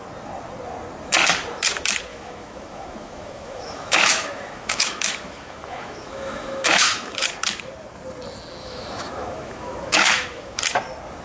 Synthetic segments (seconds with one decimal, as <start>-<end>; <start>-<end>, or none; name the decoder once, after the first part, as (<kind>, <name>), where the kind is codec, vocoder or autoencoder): 2.1-7.2 (autoencoder, DAC-VAE); 8.6-10.6